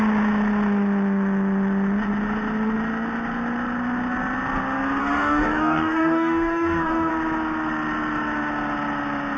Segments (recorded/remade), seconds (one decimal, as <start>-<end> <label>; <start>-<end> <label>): 0.0-5.0 recorded; 5.0-7.1 remade; 7.1-9.4 recorded